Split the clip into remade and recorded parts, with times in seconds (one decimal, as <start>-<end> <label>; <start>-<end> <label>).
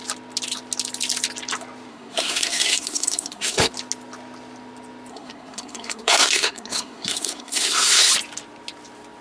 0.0-1.9 recorded; 1.9-3.7 remade; 3.7-5.1 recorded; 5.1-8.1 remade; 8.1-9.2 recorded